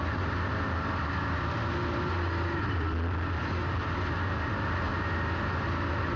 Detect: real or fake real